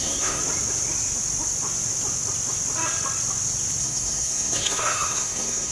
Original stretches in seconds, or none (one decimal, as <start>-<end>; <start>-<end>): 0.4-3.8

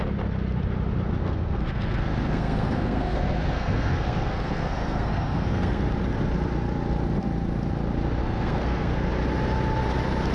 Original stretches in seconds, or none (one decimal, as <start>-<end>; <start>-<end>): 0.0-1.2; 5.8-8.2; 9.1-10.3

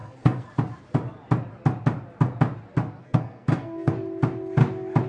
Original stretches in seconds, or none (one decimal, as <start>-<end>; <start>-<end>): 0.5-3.0; 3.9-5.1

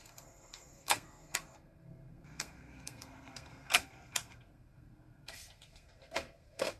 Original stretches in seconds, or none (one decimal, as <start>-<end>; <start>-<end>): none

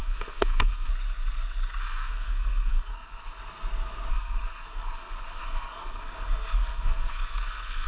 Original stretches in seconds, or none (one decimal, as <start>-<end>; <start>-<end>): 0.9-1.8; 3.4-4.1